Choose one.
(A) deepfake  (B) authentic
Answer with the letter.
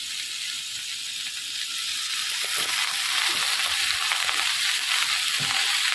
B